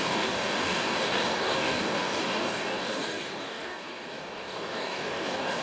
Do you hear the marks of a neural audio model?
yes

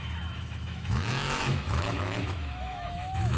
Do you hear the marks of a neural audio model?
yes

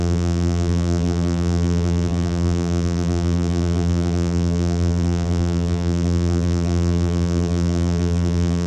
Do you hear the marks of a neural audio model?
yes